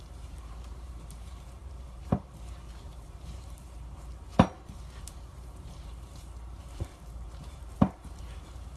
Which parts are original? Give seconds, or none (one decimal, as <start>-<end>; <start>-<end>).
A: none